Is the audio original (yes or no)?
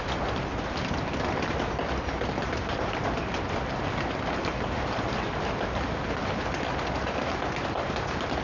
yes